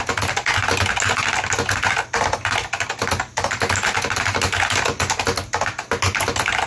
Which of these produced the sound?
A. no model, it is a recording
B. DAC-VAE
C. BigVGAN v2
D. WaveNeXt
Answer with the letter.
A